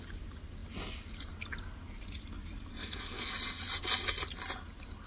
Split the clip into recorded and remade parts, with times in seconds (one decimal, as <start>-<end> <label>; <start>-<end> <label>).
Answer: 0.0-2.7 recorded; 2.7-3.3 remade; 3.3-5.1 recorded